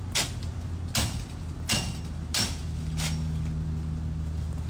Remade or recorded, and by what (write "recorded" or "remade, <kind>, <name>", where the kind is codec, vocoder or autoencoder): recorded